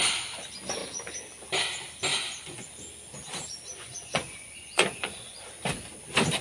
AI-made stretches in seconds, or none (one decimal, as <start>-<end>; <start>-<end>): 2.1-2.7; 3.7-5.5